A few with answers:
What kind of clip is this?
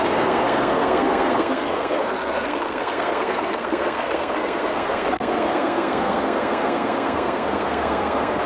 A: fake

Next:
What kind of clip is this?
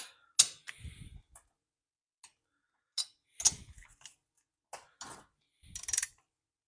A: real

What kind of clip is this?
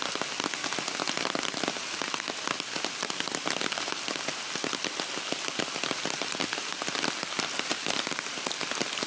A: real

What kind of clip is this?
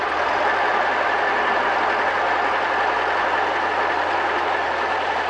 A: real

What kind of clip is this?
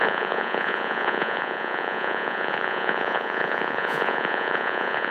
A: fake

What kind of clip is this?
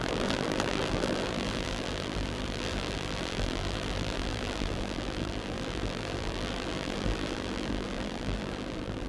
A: fake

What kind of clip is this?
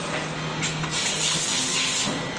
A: real